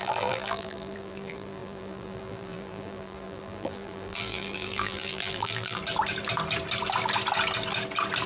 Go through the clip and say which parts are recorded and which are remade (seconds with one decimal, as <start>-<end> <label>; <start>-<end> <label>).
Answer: 0.0-5.8 remade; 5.8-8.3 recorded